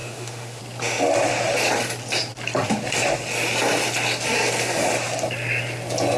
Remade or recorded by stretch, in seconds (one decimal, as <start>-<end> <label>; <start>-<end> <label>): 0.0-0.6 remade; 0.6-6.2 recorded